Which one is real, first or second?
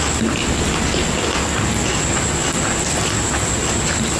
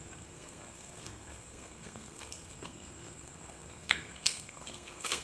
first